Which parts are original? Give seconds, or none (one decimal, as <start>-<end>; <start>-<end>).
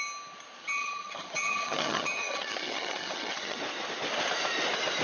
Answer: 0.0-0.6; 3.6-5.0